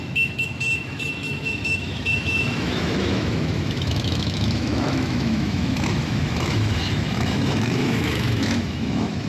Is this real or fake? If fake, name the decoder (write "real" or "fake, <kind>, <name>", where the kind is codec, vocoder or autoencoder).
fake, autoencoder, DAC-VAE